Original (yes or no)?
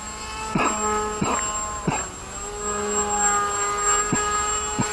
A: yes